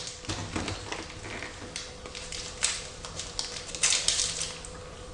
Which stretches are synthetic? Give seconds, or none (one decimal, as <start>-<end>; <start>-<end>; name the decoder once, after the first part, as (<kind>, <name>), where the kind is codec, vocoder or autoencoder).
none